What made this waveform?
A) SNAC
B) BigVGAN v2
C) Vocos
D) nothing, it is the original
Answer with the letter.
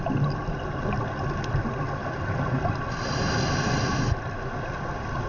D